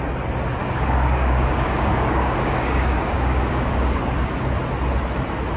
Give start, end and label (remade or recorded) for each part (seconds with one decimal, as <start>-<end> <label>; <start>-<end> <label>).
0.0-0.6 recorded; 0.6-4.0 remade; 4.0-5.6 recorded